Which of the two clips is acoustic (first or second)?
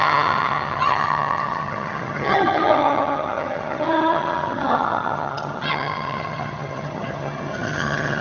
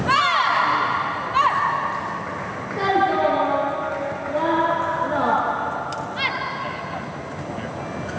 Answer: second